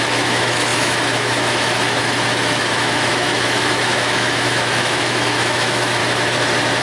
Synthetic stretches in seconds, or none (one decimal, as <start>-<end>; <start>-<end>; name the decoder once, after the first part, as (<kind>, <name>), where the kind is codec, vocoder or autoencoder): 0.0-6.0 (autoencoder, DAC-VAE)